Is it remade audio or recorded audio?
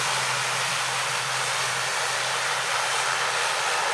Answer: recorded